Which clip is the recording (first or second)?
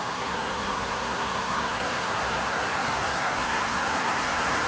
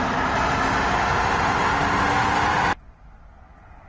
second